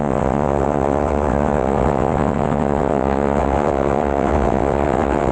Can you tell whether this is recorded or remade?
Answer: remade